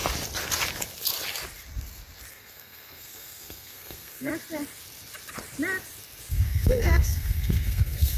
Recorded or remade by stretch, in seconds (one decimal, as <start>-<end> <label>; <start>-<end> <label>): 0.0-2.3 recorded; 2.3-4.3 remade; 4.3-6.3 recorded; 6.3-8.2 remade

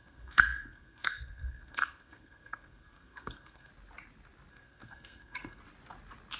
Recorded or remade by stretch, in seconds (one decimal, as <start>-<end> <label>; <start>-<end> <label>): 0.0-3.7 remade; 3.7-4.5 recorded; 4.5-5.6 remade; 5.6-6.4 recorded

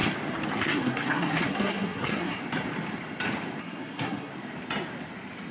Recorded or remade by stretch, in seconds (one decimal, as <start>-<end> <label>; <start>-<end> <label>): 0.0-0.5 recorded; 0.5-2.4 remade; 2.4-3.6 recorded; 3.6-4.3 remade; 4.3-5.5 recorded

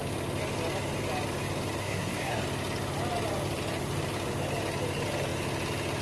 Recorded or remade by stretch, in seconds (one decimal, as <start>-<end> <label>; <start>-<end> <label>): 0.0-1.8 recorded; 1.8-2.4 remade; 2.4-6.0 recorded

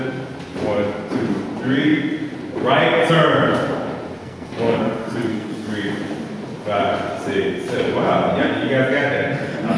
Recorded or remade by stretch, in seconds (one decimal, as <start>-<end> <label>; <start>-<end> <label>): 0.0-4.2 recorded; 4.2-5.7 remade; 5.7-9.8 recorded

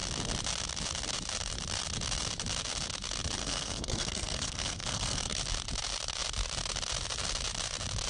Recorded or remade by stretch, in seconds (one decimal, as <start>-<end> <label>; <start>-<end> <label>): 0.0-3.4 recorded; 3.4-5.4 remade; 5.4-8.1 recorded

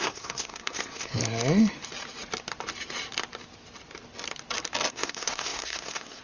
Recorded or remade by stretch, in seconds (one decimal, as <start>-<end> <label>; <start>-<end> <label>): 0.0-1.2 remade; 1.2-4.9 recorded; 4.9-6.2 remade